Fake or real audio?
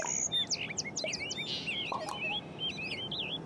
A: real